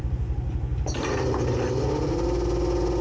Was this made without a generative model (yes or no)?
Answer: yes